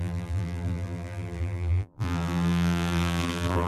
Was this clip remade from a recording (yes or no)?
yes